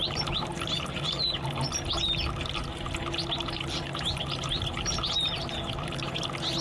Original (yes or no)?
yes